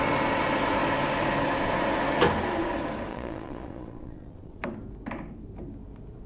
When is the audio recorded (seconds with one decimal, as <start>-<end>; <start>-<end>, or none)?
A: 0.0-3.1; 4.6-6.3